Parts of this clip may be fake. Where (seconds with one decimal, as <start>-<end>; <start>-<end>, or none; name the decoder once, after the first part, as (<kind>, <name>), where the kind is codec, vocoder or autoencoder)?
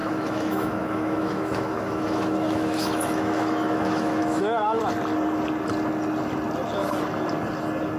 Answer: 0.0-4.8 (autoencoder, DAC-VAE)